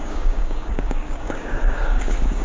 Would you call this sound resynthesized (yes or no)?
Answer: yes